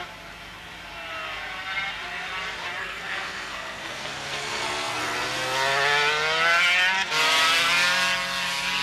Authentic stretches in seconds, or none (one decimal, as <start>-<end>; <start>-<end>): 0.0-2.8; 5.0-8.8